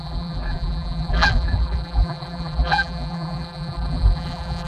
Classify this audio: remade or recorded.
remade